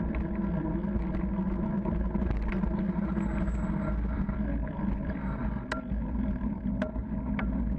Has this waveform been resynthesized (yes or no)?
no